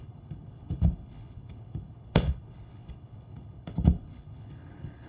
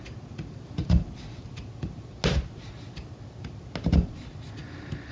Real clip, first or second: second